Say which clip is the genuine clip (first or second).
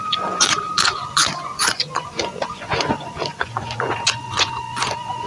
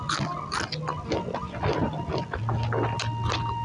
second